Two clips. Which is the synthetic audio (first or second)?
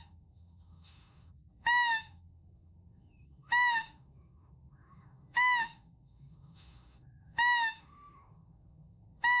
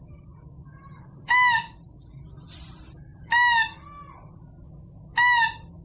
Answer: first